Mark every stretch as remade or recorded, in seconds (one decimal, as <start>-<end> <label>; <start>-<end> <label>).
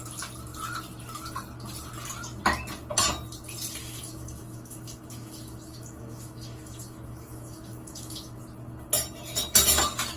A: 0.0-3.8 recorded; 3.8-8.4 remade; 8.4-10.2 recorded